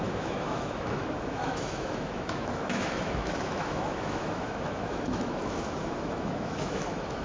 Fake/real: fake